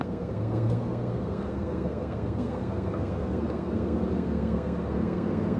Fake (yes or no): yes